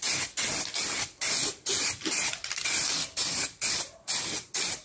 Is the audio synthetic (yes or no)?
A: no